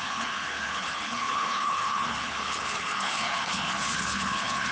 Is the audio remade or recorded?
remade